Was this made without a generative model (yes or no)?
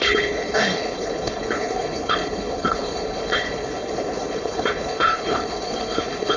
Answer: no